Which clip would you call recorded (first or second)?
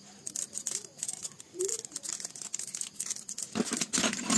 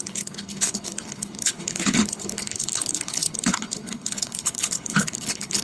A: first